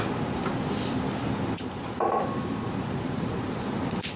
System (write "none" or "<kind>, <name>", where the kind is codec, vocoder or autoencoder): vocoder, BigVGAN v2